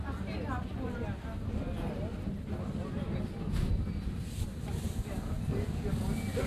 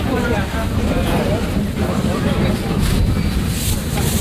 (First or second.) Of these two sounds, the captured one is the first